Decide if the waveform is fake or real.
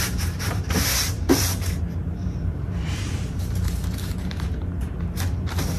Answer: fake